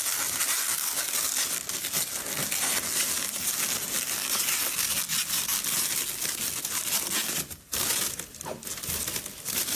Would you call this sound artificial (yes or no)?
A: no